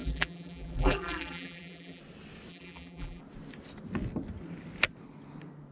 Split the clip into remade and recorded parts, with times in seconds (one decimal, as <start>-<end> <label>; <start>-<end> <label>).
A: 0.0-2.0 remade; 2.0-2.5 recorded; 2.5-3.2 remade; 3.2-5.7 recorded